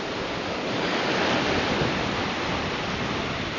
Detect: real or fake real